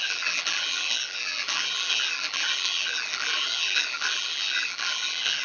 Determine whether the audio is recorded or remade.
remade